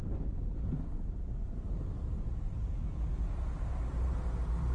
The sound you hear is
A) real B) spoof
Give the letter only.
B